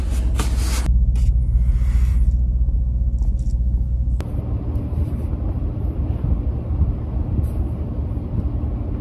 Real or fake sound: real